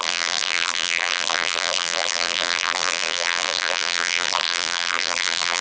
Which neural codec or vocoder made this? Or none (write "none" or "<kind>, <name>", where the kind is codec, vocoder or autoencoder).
vocoder, BigVGAN v2